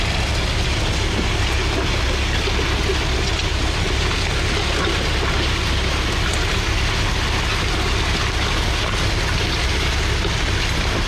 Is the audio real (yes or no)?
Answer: yes